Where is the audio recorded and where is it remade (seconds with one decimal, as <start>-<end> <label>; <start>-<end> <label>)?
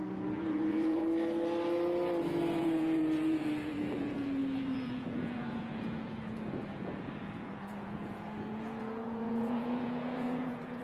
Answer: 0.0-1.0 remade; 1.0-2.6 recorded; 2.6-10.8 remade